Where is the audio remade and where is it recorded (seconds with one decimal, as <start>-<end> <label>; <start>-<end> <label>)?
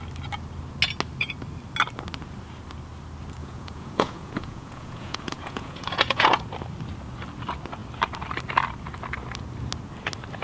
0.0-3.4 recorded; 3.4-6.4 remade; 6.4-10.4 recorded